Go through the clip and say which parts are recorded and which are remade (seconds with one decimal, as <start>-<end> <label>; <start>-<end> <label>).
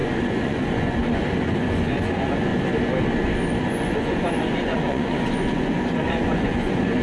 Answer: 0.0-2.5 remade; 2.5-3.6 recorded; 3.6-7.0 remade